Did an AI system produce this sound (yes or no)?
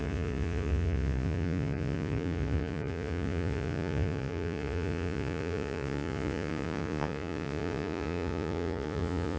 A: yes